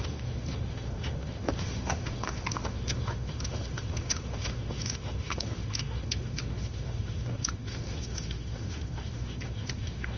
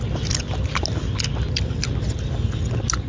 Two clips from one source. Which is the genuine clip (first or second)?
second